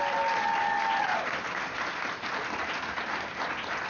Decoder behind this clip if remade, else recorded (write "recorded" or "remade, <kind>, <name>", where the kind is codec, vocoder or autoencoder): recorded